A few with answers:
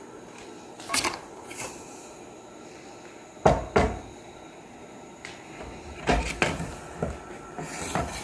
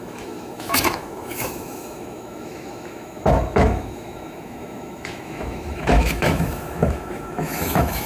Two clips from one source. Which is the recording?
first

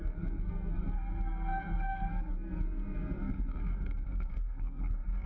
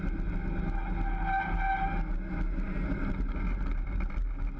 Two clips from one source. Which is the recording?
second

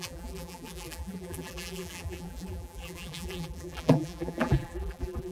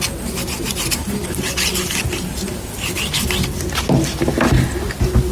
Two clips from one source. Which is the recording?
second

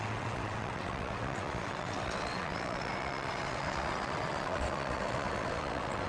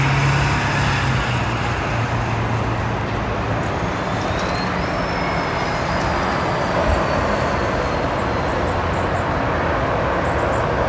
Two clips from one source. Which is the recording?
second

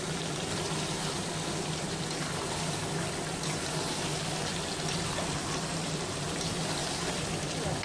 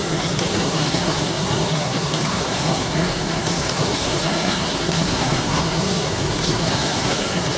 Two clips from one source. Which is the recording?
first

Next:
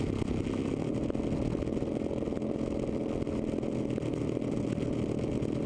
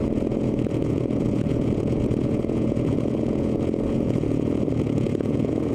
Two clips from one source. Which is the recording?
first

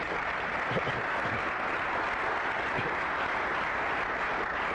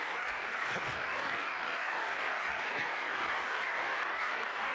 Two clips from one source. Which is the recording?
first